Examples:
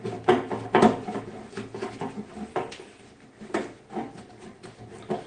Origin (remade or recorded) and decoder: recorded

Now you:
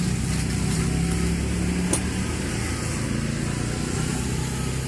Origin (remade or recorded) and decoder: recorded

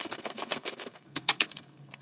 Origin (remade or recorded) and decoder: remade, codec, SNAC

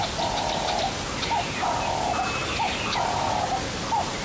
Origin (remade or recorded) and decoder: recorded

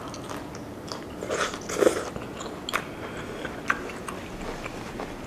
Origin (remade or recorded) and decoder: recorded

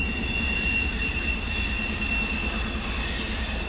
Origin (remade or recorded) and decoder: recorded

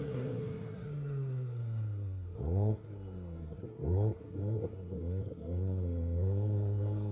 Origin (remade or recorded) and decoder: remade, codec, SNAC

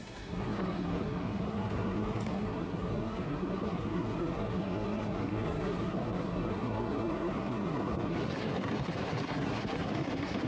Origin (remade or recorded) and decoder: remade, codec, SNAC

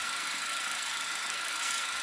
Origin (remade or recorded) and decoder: remade, codec, SNAC